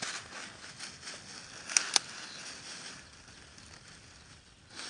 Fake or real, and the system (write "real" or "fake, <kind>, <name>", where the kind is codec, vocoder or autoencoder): real